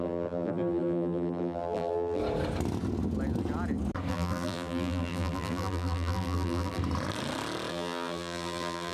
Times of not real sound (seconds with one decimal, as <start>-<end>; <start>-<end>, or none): 0.0-2.2; 4.1-6.8; 7.7-8.9